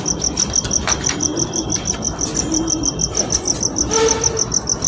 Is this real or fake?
fake